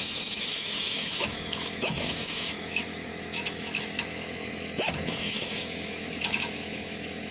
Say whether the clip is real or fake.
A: fake